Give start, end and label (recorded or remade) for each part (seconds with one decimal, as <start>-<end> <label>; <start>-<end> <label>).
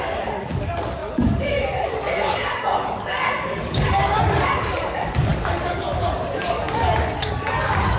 0.0-8.0 remade